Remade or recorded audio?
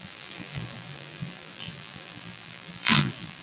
remade